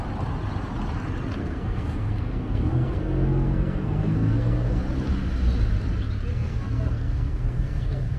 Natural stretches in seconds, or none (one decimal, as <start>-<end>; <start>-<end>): 0.0-1.4; 4.8-6.3